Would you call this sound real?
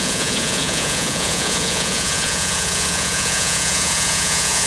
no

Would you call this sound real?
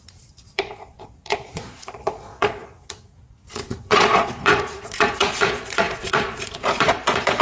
no